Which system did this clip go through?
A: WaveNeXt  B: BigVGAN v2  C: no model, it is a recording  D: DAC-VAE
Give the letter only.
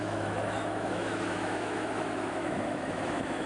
D